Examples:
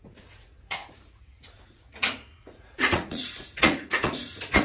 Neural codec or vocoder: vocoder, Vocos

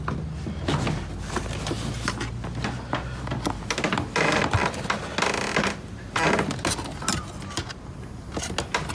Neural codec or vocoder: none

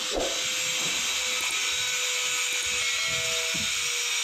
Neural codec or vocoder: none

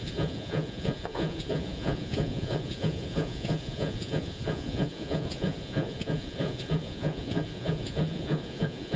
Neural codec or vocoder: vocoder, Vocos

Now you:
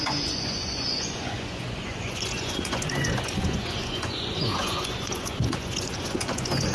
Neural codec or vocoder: vocoder, Vocos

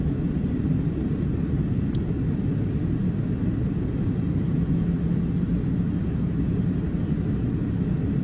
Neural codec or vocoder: none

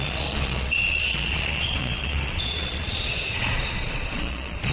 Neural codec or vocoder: vocoder, Vocos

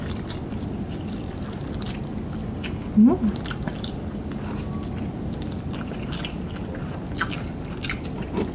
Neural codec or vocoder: none